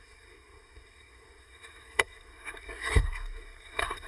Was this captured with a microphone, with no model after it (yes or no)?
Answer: no